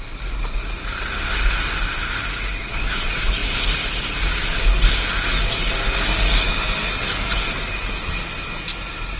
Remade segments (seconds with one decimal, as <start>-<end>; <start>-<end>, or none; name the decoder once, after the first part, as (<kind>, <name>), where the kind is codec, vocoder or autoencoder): none